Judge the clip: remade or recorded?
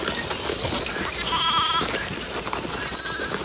recorded